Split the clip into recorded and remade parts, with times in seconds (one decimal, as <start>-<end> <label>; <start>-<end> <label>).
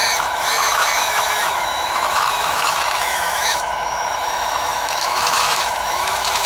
0.0-6.5 remade